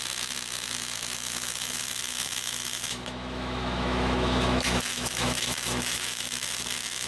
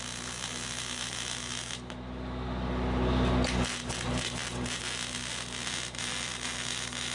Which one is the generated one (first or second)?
first